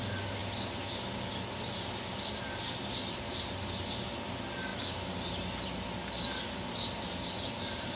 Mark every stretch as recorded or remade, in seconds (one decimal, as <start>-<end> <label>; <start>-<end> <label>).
0.0-8.0 recorded